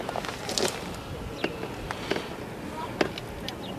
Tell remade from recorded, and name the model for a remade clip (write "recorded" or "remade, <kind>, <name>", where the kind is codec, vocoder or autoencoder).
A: recorded